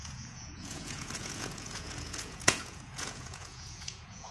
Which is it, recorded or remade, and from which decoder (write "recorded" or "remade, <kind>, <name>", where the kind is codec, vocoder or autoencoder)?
remade, vocoder, Vocos